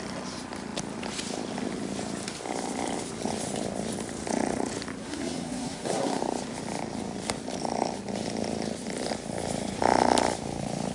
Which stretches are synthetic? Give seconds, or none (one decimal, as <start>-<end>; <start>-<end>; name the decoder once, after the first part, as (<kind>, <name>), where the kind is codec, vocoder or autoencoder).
5.0-6.2 (codec, SNAC)

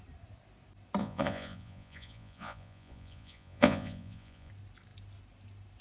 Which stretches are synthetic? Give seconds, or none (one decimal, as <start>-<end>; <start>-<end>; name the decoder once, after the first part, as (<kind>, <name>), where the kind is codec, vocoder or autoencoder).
1.0-4.5 (vocoder, Vocos)

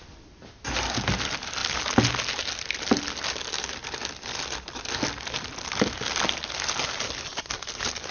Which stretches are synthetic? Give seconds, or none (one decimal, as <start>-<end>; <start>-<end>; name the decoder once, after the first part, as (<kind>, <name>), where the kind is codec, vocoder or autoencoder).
none

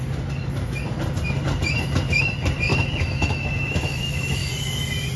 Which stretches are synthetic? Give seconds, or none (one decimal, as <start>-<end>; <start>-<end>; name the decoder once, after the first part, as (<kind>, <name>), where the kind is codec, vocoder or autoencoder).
2.7-4.5 (autoencoder, DAC-VAE)

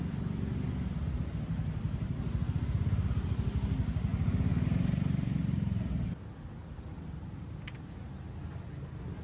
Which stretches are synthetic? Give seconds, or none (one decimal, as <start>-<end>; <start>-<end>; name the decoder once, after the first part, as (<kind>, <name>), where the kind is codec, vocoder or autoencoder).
1.6-2.2 (vocoder, BigVGAN v2)

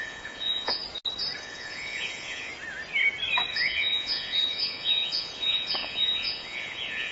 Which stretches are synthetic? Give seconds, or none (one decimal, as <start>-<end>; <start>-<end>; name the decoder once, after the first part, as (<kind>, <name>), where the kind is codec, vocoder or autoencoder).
0.0-0.8 (vocoder, Vocos); 1.4-2.5; 3.5-7.1